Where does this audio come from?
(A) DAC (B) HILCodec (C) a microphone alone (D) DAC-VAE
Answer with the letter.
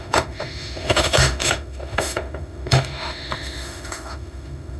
D